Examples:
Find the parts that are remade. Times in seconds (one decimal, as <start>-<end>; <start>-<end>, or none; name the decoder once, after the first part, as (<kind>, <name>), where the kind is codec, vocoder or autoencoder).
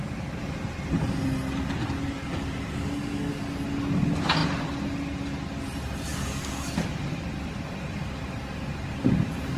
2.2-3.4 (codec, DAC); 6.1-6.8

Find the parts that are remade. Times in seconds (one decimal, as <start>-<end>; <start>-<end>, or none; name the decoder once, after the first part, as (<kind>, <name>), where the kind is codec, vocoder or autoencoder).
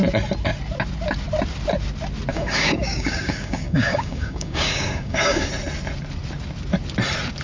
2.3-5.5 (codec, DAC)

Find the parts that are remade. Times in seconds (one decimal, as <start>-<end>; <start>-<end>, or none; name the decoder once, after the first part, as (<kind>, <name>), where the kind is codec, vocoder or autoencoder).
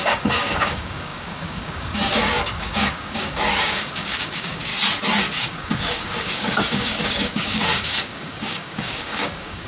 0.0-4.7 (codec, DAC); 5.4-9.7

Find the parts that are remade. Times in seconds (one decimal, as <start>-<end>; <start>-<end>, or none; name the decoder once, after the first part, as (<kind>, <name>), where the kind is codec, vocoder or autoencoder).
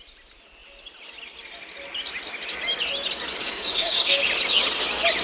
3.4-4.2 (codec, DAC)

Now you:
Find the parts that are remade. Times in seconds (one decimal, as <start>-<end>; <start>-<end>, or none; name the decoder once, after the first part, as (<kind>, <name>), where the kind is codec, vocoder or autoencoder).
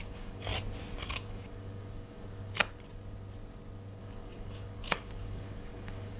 0.0-0.5 (codec, DAC); 1.1-2.6; 4.0-6.2